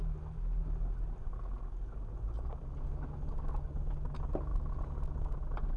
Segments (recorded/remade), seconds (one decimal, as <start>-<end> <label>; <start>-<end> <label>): 0.0-5.8 recorded